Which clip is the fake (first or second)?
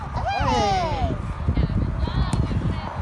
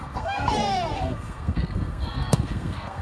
second